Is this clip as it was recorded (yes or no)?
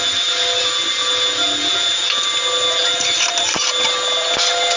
yes